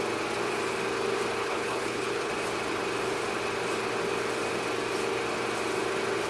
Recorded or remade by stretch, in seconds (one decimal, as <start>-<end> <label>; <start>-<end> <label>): 0.0-1.4 recorded; 1.4-2.3 remade; 2.3-6.3 recorded